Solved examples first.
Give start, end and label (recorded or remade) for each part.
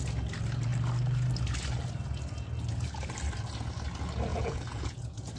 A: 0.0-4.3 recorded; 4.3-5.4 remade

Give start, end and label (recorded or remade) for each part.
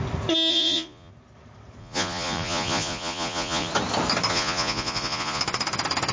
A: 0.0-0.5 recorded; 0.5-1.1 remade; 1.1-1.8 recorded; 1.8-3.7 remade; 3.7-4.3 recorded; 4.3-5.4 remade; 5.4-6.1 recorded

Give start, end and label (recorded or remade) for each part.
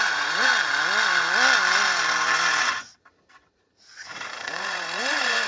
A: 0.0-0.5 remade; 0.5-2.7 recorded; 2.7-5.5 remade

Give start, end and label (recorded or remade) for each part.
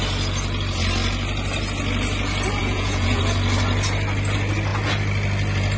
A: 0.0-2.6 recorded; 2.6-3.2 remade; 3.2-5.8 recorded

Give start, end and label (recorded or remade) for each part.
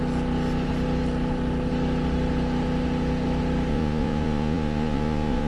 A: 0.0-3.7 recorded; 3.7-5.5 remade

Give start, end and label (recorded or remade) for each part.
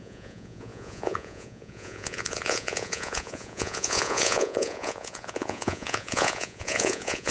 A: 0.0-7.3 remade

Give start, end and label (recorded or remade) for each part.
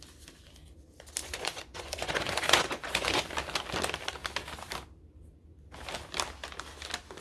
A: 0.0-1.2 recorded; 1.2-3.2 remade; 3.2-7.2 recorded